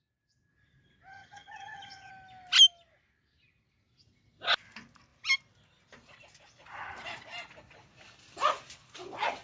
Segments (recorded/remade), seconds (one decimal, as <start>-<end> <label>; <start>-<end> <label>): 0.0-1.1 recorded; 1.1-2.1 remade; 2.1-9.4 recorded

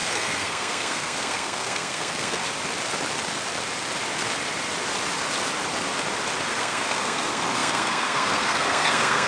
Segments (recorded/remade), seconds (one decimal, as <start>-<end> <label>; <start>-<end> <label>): 0.0-2.4 remade; 2.4-6.5 recorded; 6.5-9.3 remade

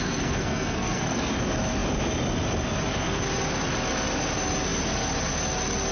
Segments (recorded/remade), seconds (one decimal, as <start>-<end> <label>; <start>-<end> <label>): 0.0-1.3 remade; 1.3-5.9 recorded

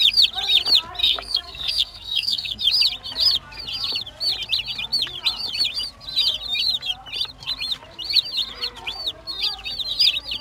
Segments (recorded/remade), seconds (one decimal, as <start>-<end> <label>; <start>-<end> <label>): 0.0-1.0 recorded; 1.0-2.6 remade; 2.6-10.4 recorded

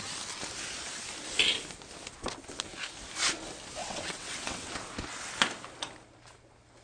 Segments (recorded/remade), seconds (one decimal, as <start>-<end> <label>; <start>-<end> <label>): 0.0-3.8 recorded; 3.8-4.7 remade; 4.7-6.8 recorded

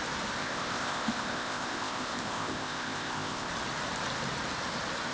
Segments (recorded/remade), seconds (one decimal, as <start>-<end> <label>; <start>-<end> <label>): 0.0-0.4 recorded; 0.4-3.5 remade; 3.5-5.1 recorded

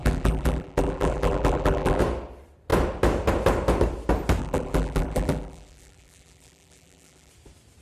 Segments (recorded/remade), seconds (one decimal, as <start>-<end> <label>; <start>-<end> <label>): 0.0-2.0 remade; 2.0-4.4 recorded; 4.4-7.3 remade; 7.3-7.8 recorded

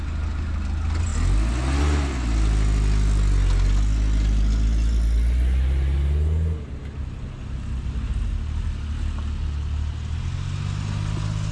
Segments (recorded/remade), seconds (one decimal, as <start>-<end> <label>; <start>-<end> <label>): 0.0-11.5 recorded